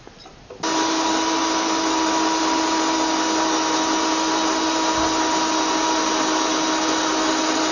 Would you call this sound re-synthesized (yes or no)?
no